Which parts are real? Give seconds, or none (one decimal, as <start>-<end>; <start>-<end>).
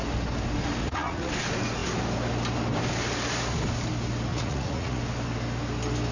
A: 0.0-0.8; 1.3-4.3; 5.0-6.1